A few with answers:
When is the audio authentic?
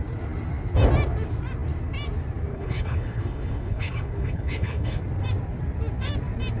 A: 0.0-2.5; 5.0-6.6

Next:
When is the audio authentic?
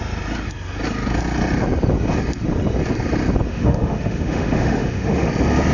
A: 0.0-3.5; 5.3-5.7